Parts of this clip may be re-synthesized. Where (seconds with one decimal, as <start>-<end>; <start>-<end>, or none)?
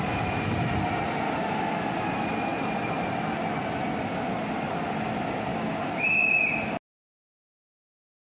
none